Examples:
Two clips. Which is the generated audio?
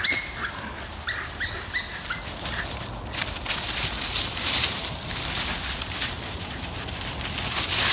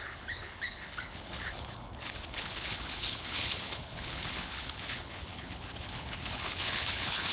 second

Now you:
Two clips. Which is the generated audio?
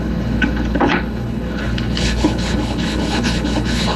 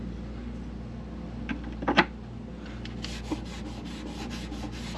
first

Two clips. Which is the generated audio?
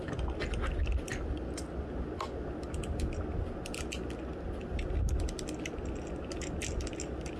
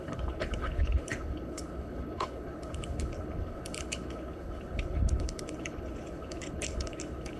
second